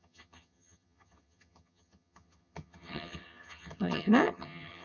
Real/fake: fake